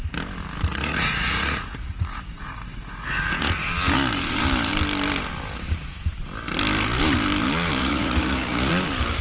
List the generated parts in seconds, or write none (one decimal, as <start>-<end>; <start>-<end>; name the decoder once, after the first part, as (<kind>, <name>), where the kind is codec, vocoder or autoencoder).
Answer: 0.7-3.7 (vocoder, Vocos); 7.8-8.7